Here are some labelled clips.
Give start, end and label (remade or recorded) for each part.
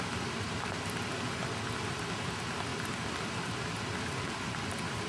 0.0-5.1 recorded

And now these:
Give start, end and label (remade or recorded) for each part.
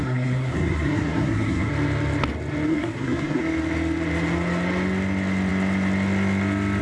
0.0-1.7 remade; 1.7-2.7 recorded; 2.7-3.4 remade; 3.4-6.8 recorded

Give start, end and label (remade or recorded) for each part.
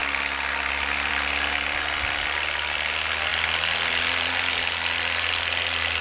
0.0-6.0 recorded